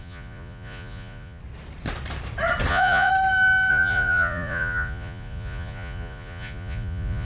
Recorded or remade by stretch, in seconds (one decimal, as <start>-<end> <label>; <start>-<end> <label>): 0.0-1.4 remade; 1.4-2.7 recorded; 2.7-3.1 remade; 3.1-3.7 recorded; 3.7-7.3 remade